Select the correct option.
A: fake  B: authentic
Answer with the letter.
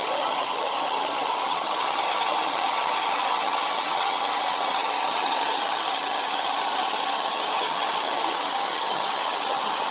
A